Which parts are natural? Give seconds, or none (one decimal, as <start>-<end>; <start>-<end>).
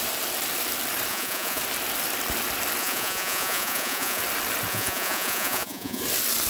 0.0-1.1; 1.6-2.8; 4.2-4.7; 6.0-6.5